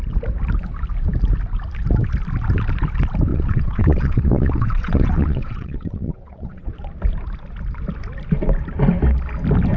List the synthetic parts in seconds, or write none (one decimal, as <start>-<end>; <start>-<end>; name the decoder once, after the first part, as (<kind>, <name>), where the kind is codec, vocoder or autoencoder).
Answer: 3.3-6.7 (vocoder, WaveNeXt)